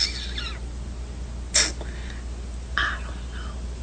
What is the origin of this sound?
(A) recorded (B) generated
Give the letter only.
A